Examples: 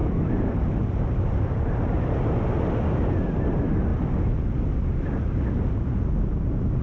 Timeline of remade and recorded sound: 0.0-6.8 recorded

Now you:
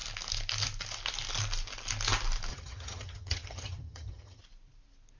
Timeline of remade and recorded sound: 0.0-2.5 recorded; 2.5-4.4 remade; 4.4-5.2 recorded

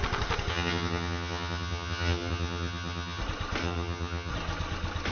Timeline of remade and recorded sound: 0.0-0.5 recorded; 0.5-3.2 remade; 3.2-3.6 recorded; 3.6-4.3 remade; 4.3-5.1 recorded